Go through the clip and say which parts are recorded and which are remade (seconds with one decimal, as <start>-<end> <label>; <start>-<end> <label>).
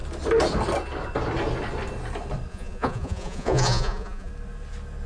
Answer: 0.0-2.5 recorded; 2.5-4.3 remade; 4.3-5.1 recorded